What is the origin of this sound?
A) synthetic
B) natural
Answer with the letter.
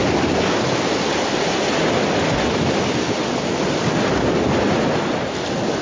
B